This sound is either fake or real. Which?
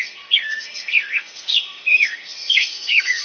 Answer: fake